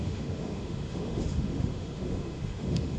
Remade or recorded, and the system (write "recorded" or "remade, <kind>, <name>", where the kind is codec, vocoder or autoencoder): remade, autoencoder, DAC-VAE